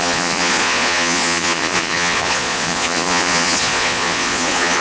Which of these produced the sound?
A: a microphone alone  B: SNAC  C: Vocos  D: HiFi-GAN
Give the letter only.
C